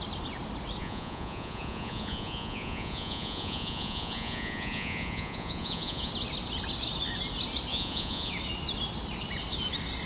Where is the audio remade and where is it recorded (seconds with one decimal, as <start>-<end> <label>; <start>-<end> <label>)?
0.0-0.8 recorded; 0.8-6.1 remade; 6.1-7.7 recorded; 7.7-8.3 remade; 8.3-10.1 recorded